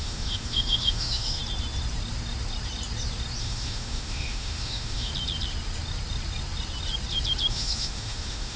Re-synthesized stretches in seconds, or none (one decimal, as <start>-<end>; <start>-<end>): 0.0-1.4; 3.4-5.1; 7.5-8.6